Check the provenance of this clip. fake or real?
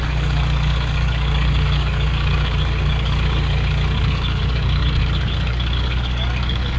fake